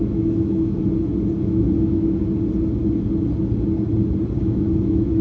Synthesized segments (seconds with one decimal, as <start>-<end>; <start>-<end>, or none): 0.0-0.8; 1.4-2.2; 4.4-5.2